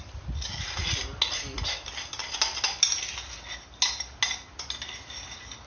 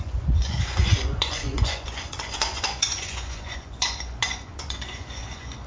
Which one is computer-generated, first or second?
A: second